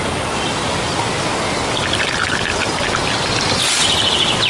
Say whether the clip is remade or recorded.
recorded